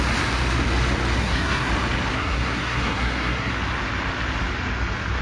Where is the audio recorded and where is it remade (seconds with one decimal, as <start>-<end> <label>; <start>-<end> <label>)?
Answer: 0.0-1.2 recorded; 1.2-1.7 remade; 1.7-2.1 recorded; 2.1-3.5 remade; 3.5-5.2 recorded